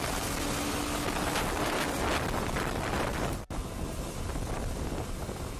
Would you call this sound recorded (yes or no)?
yes